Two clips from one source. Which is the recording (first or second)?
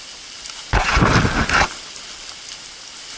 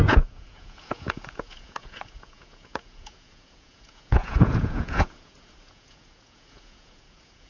first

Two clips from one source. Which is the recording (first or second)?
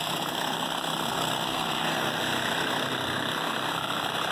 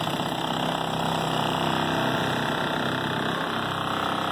second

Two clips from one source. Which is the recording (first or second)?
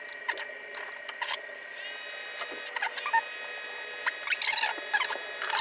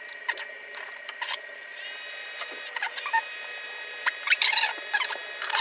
first